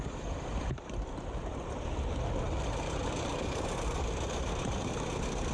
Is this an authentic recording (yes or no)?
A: yes